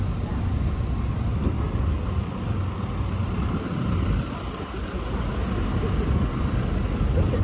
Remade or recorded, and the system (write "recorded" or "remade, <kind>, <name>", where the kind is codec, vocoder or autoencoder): recorded